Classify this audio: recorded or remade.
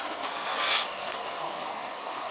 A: remade